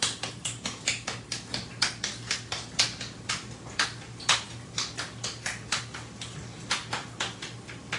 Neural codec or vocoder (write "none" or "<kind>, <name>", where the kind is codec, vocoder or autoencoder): none